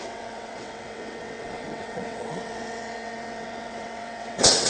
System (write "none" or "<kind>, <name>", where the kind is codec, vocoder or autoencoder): vocoder, WaveNeXt